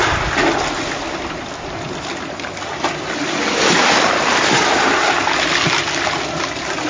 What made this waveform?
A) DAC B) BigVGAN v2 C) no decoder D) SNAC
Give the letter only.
C